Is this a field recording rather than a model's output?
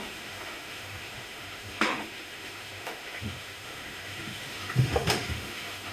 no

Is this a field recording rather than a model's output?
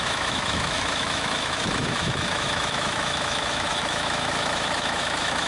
no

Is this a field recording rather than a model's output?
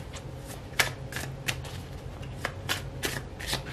yes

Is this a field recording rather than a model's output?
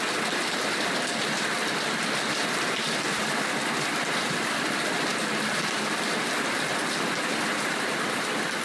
yes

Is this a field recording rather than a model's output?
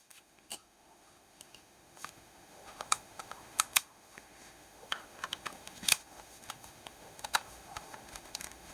no